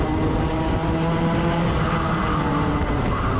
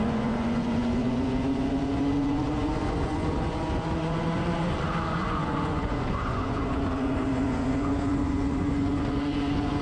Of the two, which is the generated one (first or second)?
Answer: second